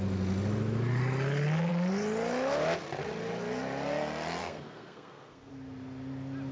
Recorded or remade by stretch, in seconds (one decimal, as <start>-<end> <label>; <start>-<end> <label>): 0.0-4.4 recorded; 4.4-5.5 remade; 5.5-6.5 recorded